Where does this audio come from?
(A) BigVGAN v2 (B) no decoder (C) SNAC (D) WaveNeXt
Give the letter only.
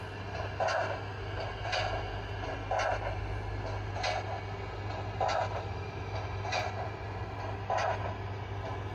B